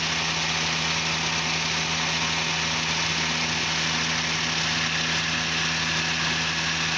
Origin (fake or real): real